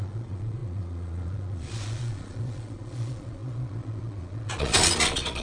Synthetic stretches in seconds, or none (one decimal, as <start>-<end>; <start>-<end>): 0.0-5.4